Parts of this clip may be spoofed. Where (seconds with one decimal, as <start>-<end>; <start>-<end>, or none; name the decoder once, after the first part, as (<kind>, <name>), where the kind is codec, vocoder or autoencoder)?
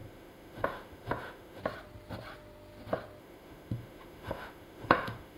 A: 0.0-1.6 (autoencoder, DAC-VAE); 3.2-5.4